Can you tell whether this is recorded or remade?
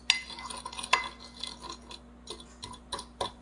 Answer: recorded